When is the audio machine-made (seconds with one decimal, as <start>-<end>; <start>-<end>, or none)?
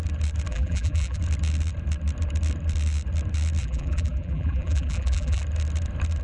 0.5-1.2; 3.6-5.4